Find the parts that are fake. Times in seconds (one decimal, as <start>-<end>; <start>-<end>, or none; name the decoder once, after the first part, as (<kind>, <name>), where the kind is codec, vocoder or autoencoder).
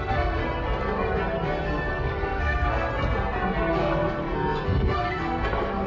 0.0-0.4 (codec, SNAC); 1.9-2.9; 3.7-5.9